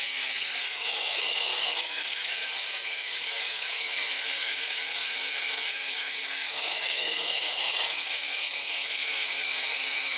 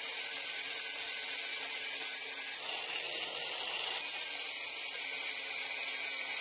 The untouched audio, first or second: second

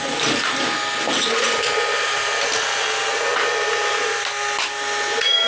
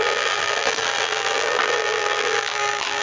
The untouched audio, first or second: first